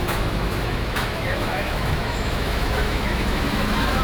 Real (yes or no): no